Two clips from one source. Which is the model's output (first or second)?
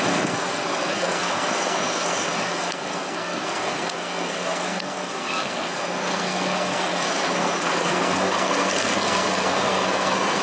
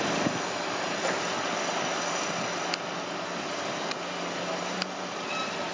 first